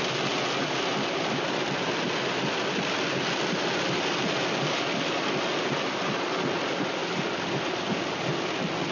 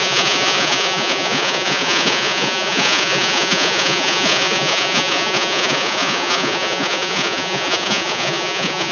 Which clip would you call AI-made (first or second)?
second